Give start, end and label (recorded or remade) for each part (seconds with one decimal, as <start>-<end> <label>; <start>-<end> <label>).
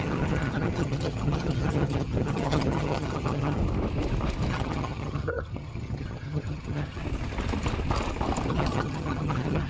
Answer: 0.0-3.6 remade; 3.6-4.5 recorded; 4.5-7.0 remade; 7.0-8.5 recorded; 8.5-9.7 remade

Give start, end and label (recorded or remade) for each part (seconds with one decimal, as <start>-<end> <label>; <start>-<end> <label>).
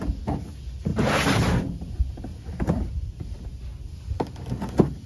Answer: 0.0-5.1 recorded